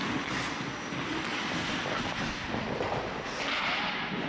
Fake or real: real